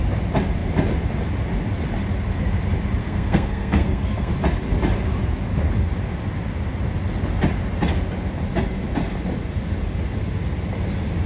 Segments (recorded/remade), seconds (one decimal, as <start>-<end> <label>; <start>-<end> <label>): 0.0-3.0 recorded; 3.0-4.3 remade; 4.3-11.3 recorded